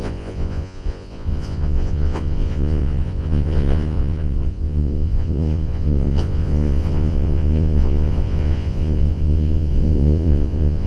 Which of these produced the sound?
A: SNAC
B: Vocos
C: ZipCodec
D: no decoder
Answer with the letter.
B